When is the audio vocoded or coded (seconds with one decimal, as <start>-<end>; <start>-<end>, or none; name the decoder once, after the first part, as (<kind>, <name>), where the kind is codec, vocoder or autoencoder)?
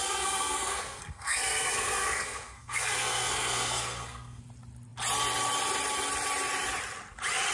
0.0-4.4 (codec, SNAC)